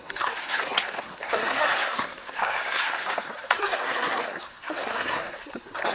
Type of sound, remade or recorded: remade